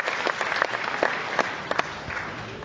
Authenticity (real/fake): real